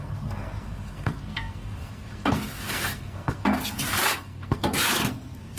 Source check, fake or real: fake